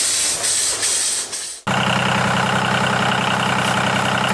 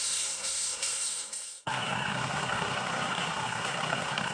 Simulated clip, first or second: second